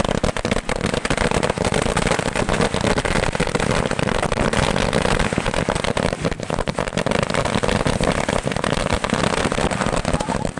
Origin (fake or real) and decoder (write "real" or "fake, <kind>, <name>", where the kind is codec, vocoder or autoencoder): real